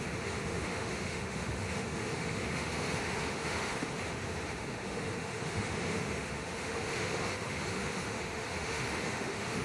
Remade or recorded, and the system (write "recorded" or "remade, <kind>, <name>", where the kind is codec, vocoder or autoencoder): remade, autoencoder, DAC-VAE